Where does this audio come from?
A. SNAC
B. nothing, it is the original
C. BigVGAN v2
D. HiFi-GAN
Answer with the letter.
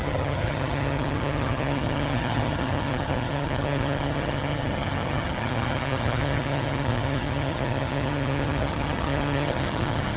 D